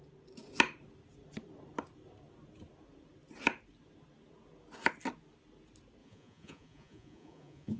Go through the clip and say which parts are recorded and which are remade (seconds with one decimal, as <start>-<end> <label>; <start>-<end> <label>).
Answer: 0.0-6.0 recorded; 6.0-7.8 remade